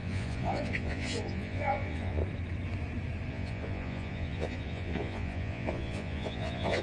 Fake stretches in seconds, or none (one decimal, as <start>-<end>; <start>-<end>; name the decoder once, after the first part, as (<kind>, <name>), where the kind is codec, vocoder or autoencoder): 0.0-2.2 (vocoder, Vocos); 3.3-6.8